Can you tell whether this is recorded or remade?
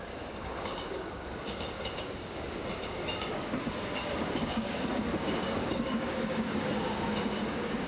remade